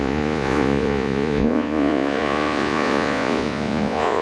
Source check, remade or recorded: remade